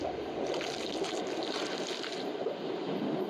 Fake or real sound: real